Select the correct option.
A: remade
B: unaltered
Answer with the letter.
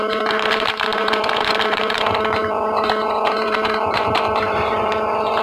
A